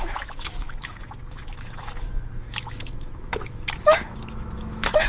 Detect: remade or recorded remade